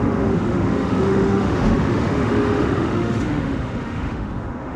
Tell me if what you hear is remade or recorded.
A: remade